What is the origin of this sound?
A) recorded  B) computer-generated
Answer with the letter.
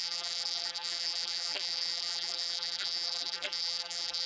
B